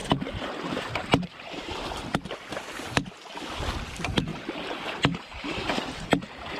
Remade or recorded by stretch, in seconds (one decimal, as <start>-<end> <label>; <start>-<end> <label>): 0.0-2.0 remade; 2.0-4.3 recorded; 4.3-4.9 remade; 4.9-6.6 recorded